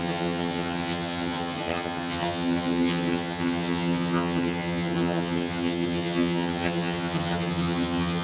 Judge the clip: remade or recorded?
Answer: remade